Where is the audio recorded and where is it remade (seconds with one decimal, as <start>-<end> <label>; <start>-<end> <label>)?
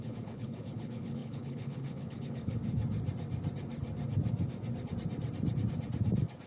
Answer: 0.0-2.6 remade; 2.6-6.5 recorded